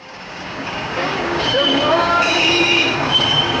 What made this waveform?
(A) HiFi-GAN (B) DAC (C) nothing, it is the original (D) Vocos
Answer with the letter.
B